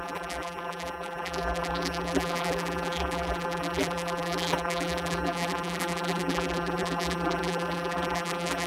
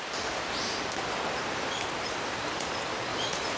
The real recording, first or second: second